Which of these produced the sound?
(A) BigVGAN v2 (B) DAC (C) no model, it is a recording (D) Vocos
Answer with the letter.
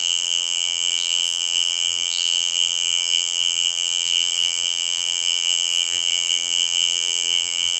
A